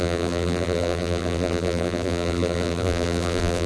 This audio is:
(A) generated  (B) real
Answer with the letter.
A